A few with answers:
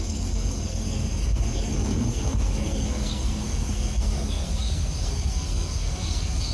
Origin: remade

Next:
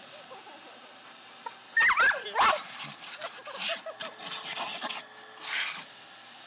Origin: recorded